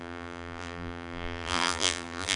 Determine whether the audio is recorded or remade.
remade